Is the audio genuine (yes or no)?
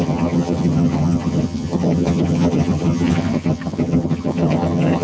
no